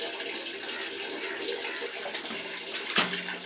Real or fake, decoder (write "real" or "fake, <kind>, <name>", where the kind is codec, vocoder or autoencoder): real